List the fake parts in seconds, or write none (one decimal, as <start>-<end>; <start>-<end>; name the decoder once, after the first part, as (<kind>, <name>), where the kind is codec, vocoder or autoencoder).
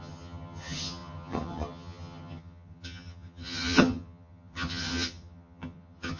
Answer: 0.0-6.2 (vocoder, HiFi-GAN)